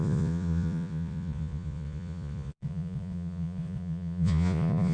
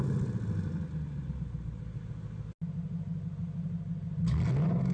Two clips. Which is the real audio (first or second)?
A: second